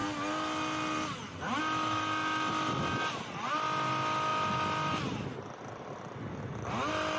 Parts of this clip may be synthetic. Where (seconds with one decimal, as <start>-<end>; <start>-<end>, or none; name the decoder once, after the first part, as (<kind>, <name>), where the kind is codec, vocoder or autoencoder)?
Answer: none